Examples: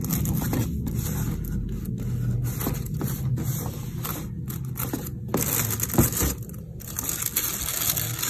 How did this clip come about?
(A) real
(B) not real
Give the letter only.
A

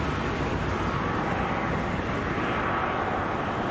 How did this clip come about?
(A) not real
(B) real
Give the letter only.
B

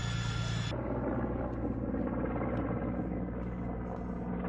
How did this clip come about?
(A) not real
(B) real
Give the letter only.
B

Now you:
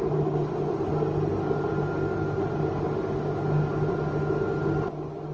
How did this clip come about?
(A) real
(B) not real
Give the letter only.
A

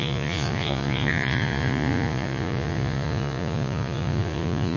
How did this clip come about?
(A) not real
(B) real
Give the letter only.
A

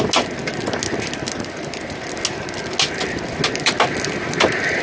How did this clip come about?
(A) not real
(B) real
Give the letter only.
B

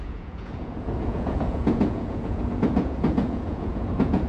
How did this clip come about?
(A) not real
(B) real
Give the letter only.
A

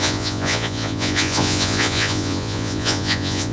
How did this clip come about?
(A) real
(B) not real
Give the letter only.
B